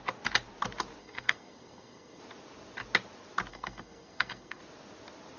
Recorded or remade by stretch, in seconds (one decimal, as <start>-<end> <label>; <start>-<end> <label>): 0.0-1.0 recorded; 1.0-2.2 remade; 2.2-3.5 recorded; 3.5-4.6 remade; 4.6-5.4 recorded